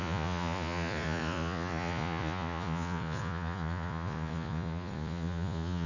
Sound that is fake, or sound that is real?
fake